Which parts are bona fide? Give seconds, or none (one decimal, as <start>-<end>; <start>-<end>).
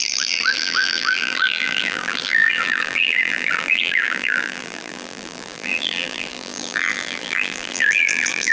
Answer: none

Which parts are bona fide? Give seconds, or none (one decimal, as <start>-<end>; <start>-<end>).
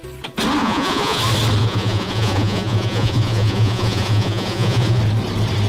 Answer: 0.0-0.6; 1.2-1.6; 5.0-5.7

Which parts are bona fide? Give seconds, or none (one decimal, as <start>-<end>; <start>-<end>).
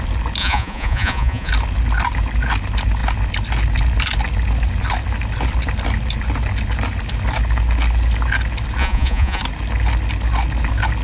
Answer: 0.0-0.4; 1.5-8.8; 9.4-11.0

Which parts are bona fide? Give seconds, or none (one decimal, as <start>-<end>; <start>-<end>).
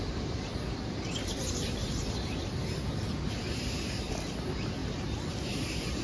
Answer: 0.0-6.0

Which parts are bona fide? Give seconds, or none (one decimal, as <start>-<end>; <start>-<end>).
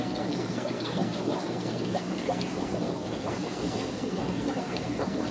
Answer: none